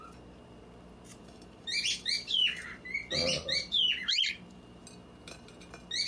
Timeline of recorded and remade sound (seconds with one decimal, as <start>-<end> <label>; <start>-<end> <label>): 0.0-1.1 recorded; 1.1-4.8 remade; 4.8-6.1 recorded